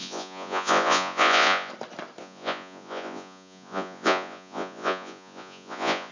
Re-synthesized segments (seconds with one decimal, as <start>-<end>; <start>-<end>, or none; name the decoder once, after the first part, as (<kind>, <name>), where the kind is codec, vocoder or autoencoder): 0.0-1.7 (vocoder, Vocos); 2.2-6.1